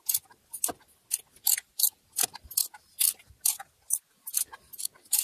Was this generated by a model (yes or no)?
no